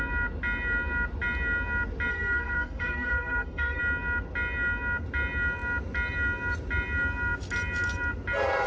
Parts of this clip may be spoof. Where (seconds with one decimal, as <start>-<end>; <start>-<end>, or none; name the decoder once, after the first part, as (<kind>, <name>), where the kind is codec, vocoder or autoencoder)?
2.1-3.8 (codec, SNAC)